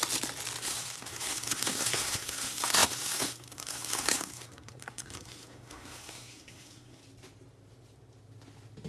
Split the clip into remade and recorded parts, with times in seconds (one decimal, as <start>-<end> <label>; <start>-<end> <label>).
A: 0.0-0.6 recorded; 0.6-7.0 remade; 7.0-8.9 recorded